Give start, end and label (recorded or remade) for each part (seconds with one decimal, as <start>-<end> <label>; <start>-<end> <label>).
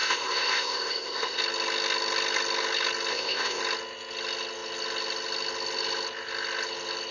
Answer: 0.0-1.4 remade; 1.4-3.1 recorded; 3.1-3.6 remade; 3.6-7.1 recorded